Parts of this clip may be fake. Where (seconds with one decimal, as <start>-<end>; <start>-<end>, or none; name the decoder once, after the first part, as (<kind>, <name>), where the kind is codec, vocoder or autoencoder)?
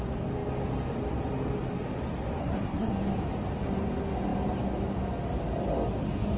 2.4-2.9 (codec, SNAC)